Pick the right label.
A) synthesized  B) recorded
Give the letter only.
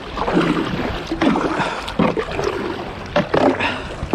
B